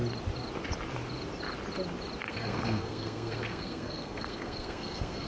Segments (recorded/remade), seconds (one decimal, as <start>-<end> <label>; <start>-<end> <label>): 0.0-2.2 recorded; 2.2-5.3 remade